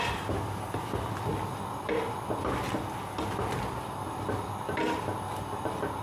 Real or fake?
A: real